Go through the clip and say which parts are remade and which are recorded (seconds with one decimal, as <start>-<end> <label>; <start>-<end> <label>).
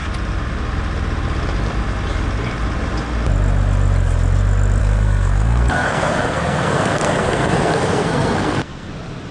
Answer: 0.0-4.8 recorded; 4.8-8.9 remade; 8.9-9.3 recorded